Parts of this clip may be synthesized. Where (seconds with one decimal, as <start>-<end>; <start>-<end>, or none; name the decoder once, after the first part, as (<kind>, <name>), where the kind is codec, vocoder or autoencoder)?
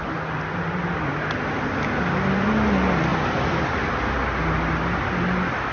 3.1-4.1 (vocoder, BigVGAN v2)